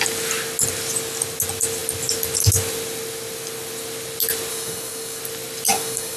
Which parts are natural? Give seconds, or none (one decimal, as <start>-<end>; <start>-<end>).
0.0-4.5; 5.2-5.7